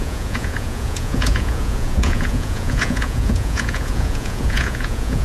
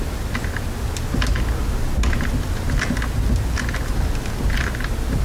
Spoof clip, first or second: first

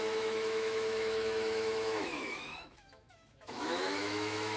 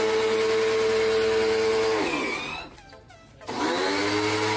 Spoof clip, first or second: first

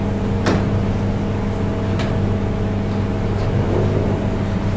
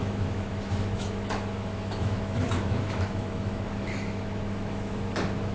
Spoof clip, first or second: second